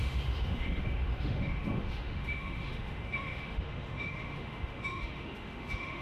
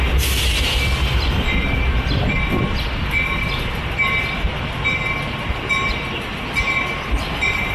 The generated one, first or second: first